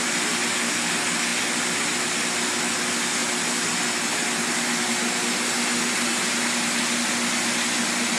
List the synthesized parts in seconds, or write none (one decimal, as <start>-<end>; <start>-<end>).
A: 6.1-6.8